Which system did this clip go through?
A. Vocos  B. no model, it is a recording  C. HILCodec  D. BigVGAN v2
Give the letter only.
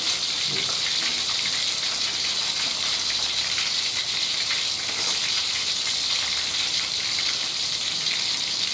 D